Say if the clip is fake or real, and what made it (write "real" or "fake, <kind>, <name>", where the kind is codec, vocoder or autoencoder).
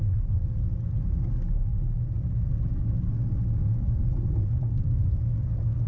real